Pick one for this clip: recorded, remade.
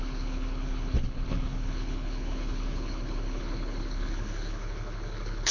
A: remade